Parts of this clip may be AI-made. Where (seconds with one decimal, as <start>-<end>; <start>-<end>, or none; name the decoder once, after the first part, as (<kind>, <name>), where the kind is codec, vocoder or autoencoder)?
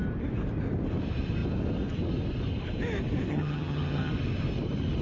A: 3.3-4.1 (vocoder, HiFi-GAN)